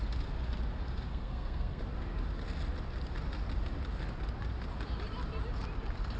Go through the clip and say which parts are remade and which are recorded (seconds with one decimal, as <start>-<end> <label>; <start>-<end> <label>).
0.0-1.1 recorded; 1.1-1.8 remade; 1.8-6.2 recorded

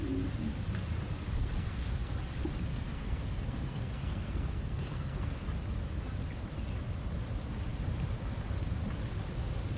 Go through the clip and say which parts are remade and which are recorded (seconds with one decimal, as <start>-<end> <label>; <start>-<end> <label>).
0.0-1.4 recorded; 1.4-2.1 remade; 2.1-2.7 recorded; 2.7-5.4 remade; 5.4-9.8 recorded

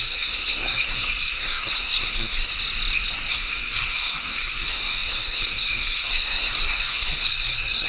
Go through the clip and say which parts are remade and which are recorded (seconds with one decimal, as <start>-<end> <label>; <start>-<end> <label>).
0.0-2.5 remade; 2.5-3.3 recorded; 3.3-7.9 remade

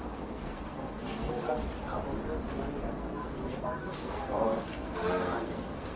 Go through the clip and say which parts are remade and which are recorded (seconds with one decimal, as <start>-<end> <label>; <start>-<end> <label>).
0.0-1.6 remade; 1.6-2.8 recorded; 2.8-6.0 remade

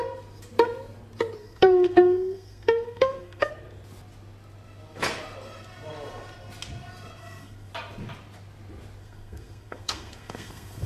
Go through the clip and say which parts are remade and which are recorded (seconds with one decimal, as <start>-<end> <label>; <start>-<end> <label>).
0.0-1.4 recorded; 1.4-3.5 remade; 3.5-7.2 recorded; 7.2-7.7 remade; 7.7-9.0 recorded; 9.0-10.9 remade

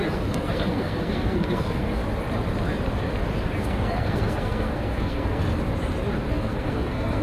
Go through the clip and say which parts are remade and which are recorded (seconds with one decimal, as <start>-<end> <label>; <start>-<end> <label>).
0.0-2.0 remade; 2.0-3.6 recorded; 3.6-5.4 remade; 5.4-6.3 recorded; 6.3-7.2 remade